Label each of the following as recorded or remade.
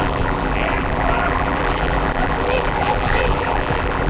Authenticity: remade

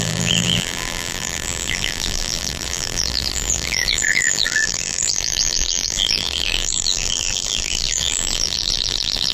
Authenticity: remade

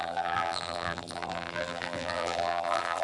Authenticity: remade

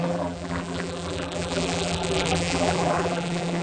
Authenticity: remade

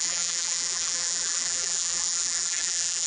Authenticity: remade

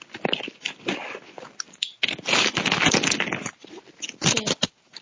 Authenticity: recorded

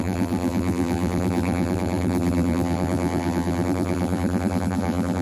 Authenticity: remade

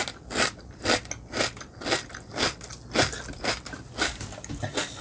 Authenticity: recorded